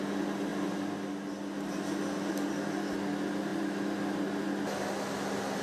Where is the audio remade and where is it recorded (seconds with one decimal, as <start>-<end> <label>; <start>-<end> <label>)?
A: 0.0-5.6 recorded